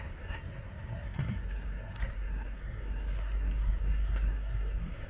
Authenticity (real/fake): fake